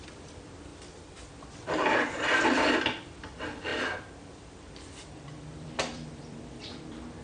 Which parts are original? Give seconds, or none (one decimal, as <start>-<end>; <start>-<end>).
0.7-1.3